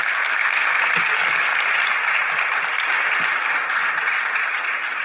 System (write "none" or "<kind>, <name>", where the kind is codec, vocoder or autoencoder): none